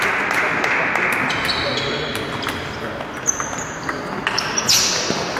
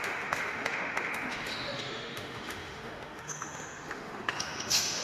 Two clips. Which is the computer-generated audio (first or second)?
second